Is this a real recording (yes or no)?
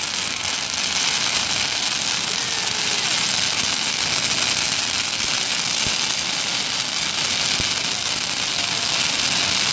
yes